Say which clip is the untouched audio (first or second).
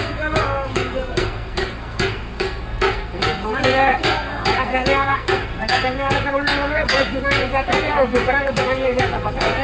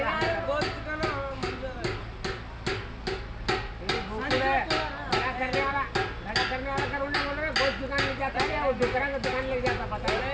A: second